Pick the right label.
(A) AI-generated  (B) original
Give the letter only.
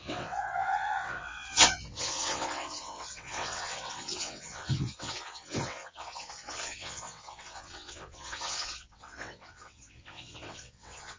A